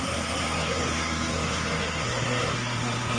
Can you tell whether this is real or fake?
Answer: fake